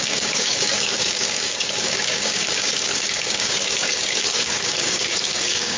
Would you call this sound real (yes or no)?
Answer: no